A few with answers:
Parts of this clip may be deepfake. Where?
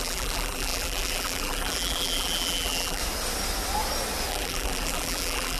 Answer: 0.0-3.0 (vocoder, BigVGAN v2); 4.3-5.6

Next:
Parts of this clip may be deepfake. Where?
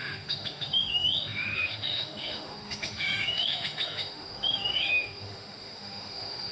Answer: 0.0-6.5 (autoencoder, DAC-VAE)